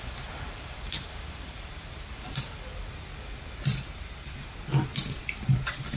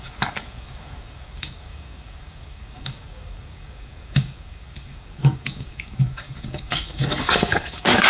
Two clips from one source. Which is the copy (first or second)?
second